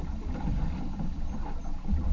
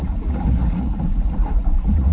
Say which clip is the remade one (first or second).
second